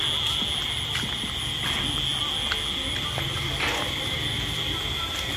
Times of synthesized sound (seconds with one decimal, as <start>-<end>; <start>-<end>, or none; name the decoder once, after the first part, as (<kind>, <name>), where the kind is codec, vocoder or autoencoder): none